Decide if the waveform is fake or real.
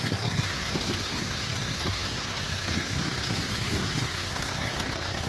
fake